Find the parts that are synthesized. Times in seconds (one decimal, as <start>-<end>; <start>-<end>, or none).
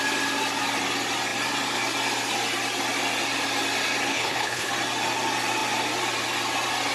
4.1-4.7